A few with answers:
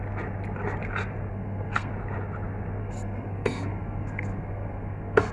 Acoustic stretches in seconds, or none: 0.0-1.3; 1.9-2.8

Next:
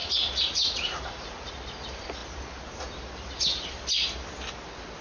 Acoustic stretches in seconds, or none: 1.5-5.0